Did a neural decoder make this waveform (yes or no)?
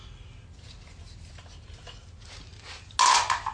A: no